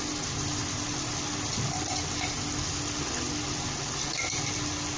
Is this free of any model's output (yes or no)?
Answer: yes